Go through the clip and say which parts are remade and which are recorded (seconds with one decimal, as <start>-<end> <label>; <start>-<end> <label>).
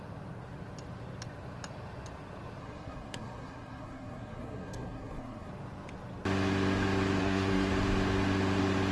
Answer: 0.0-2.6 recorded; 2.6-5.5 remade; 5.5-7.2 recorded; 7.2-7.7 remade; 7.7-8.9 recorded